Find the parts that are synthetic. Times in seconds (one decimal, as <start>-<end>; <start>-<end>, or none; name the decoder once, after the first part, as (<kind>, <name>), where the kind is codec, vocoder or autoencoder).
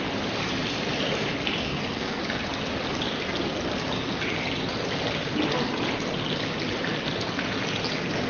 1.6-2.2 (codec, SNAC)